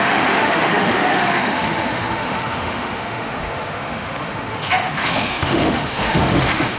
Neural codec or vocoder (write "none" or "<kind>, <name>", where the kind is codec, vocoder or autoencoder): autoencoder, DAC-VAE